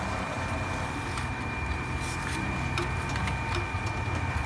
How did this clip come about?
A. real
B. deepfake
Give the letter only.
B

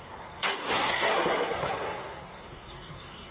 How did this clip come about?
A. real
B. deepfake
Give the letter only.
B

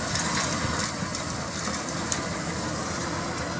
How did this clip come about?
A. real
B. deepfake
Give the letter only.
A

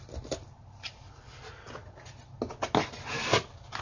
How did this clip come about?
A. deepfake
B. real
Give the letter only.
B